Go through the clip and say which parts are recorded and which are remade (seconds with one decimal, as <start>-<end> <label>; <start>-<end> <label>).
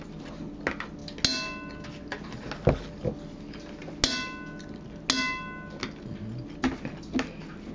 0.0-7.7 recorded